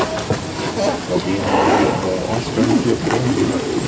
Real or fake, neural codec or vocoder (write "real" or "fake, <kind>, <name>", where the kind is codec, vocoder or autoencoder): real